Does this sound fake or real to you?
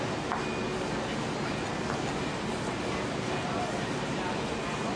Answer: real